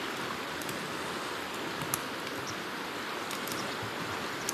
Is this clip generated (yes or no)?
no